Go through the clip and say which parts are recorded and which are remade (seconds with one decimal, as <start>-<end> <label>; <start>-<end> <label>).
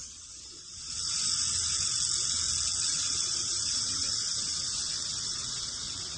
0.0-1.1 remade; 1.1-2.7 recorded; 2.7-6.2 remade